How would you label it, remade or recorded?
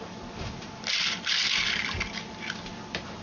recorded